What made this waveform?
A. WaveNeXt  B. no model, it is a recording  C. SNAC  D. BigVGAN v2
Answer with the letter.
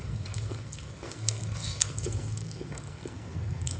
C